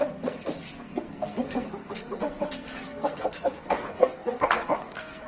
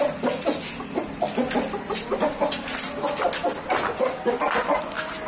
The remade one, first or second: first